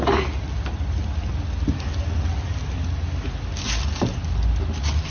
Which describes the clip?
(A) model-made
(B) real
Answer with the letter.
B